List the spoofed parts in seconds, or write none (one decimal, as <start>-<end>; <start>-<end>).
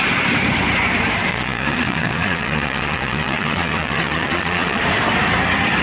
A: 1.3-4.8